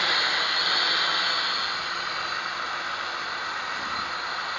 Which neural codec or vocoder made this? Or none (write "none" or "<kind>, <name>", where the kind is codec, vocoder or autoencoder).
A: none